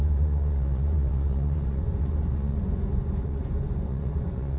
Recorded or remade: remade